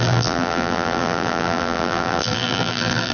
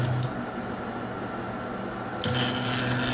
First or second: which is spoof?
first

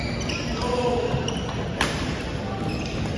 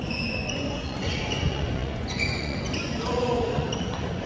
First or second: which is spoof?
second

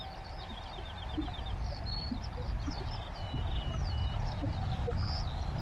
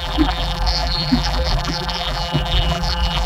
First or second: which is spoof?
second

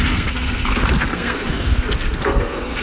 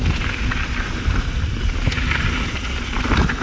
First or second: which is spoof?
first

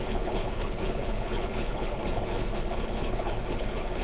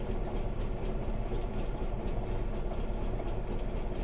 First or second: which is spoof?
first